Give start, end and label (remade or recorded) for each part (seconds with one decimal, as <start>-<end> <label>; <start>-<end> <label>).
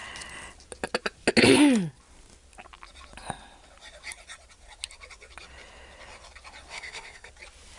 0.0-6.7 recorded; 6.7-7.3 remade; 7.3-7.8 recorded